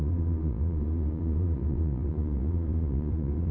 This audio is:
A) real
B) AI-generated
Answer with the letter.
B